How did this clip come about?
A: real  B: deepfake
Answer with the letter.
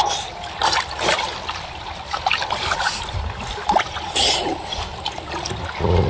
B